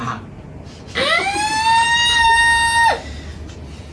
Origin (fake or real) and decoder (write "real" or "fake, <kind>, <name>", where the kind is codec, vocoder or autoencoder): real